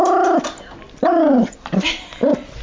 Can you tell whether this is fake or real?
real